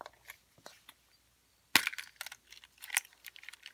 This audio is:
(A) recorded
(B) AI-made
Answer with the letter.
A